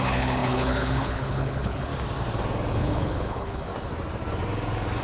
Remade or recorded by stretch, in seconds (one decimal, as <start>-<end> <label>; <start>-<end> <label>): 0.0-1.9 remade; 1.9-2.7 recorded; 2.7-3.7 remade; 3.7-5.0 recorded